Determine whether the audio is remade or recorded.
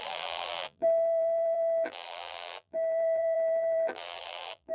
remade